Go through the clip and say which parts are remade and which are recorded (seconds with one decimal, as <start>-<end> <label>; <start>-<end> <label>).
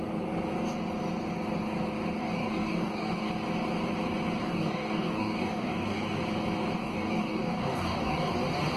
0.0-2.2 recorded; 2.2-3.3 remade; 3.3-4.4 recorded; 4.4-6.2 remade; 6.2-6.8 recorded; 6.8-8.3 remade; 8.3-8.8 recorded